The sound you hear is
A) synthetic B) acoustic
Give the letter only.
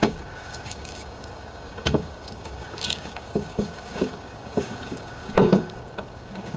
A